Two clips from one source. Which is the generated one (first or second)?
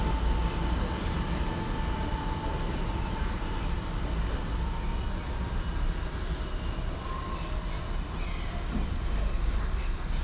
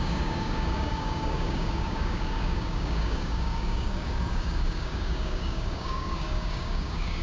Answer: second